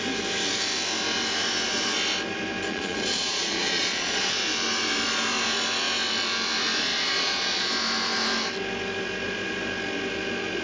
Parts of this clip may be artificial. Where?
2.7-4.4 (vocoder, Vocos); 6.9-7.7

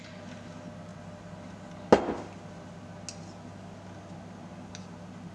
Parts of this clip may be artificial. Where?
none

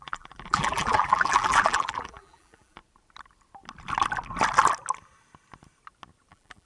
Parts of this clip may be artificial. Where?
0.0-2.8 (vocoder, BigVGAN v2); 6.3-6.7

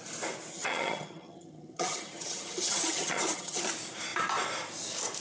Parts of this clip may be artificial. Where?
0.5-3.6 (vocoder, HiFi-GAN)

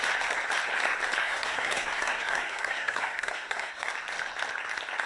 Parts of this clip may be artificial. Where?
1.2-3.9 (codec, SNAC)

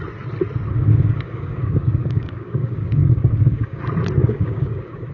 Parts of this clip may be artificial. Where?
0.7-3.8 (codec, DAC); 4.2-5.1